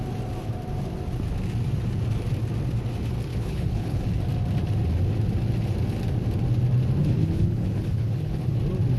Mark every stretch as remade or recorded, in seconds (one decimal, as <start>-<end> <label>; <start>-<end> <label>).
0.0-3.3 recorded; 3.3-4.0 remade; 4.0-7.0 recorded; 7.0-8.6 remade; 8.6-9.0 recorded